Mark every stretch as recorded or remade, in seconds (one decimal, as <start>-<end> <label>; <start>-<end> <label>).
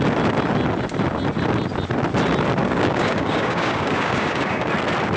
0.0-2.6 recorded; 2.6-4.7 remade; 4.7-5.2 recorded